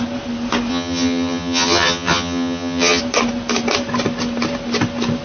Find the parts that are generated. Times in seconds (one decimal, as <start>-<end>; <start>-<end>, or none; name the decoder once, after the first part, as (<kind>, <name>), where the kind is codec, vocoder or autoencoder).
0.7-3.0 (vocoder, HiFi-GAN)